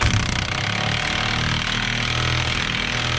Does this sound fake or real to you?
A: real